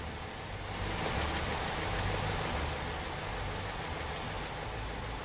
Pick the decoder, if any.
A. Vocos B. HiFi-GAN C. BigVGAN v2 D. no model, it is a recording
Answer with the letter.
D